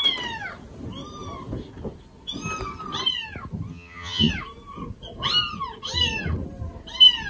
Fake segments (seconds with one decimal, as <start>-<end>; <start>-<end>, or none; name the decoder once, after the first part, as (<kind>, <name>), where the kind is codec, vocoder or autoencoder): 3.7-4.3 (vocoder, HiFi-GAN)